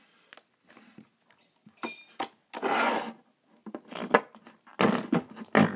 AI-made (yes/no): no